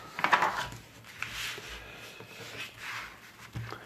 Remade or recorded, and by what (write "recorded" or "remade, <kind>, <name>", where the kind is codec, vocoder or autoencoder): recorded